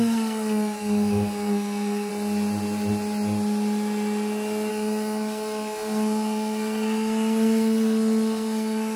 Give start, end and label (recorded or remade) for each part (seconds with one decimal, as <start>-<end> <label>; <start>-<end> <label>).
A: 0.0-2.1 remade; 2.1-4.7 recorded; 4.7-9.0 remade